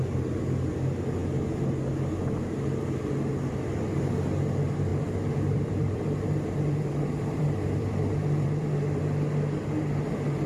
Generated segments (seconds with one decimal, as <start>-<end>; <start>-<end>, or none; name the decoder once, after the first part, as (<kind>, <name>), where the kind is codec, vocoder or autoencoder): 4.9-9.0 (vocoder, BigVGAN v2)